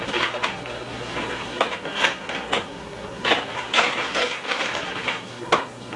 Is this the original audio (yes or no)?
no